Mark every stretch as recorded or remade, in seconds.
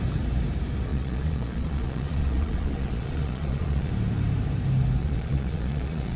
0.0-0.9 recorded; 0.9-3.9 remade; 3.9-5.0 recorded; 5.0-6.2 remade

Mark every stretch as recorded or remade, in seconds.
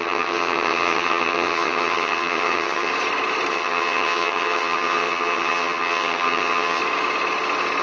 0.0-2.9 remade; 2.9-3.5 recorded; 3.5-6.8 remade; 6.8-7.8 recorded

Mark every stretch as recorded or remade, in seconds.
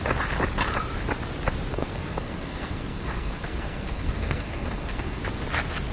0.0-1.7 recorded; 1.7-5.2 remade; 5.2-5.9 recorded